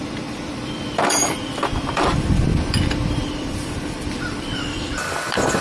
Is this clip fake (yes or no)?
yes